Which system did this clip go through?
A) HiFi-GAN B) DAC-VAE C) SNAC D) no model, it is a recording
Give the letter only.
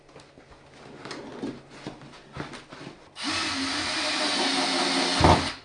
D